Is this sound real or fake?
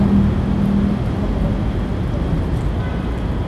real